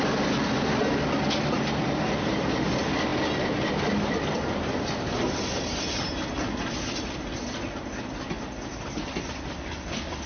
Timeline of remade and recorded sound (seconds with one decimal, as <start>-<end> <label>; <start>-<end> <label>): 0.0-10.3 recorded